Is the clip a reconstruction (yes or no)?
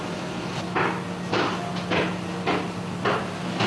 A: no